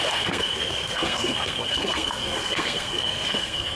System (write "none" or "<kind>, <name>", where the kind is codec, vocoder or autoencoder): codec, SNAC